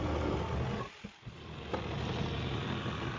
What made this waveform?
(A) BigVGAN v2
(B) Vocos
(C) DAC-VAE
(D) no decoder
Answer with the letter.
D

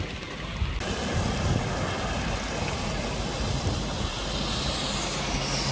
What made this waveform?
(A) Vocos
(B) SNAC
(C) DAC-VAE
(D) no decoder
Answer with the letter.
D